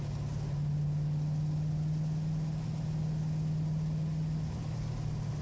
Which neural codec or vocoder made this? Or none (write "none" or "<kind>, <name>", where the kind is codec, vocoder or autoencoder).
none